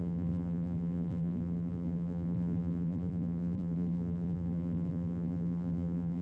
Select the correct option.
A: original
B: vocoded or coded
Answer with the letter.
B